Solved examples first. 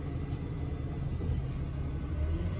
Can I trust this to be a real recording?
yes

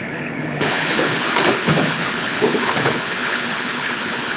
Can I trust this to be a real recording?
no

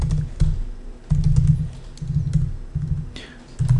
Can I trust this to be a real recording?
yes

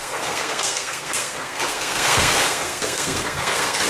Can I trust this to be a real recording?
no